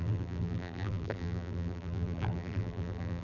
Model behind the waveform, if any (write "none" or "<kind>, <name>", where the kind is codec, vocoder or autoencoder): vocoder, BigVGAN v2